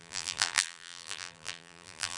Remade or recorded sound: remade